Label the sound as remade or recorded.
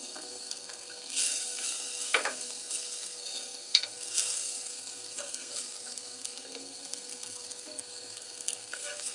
remade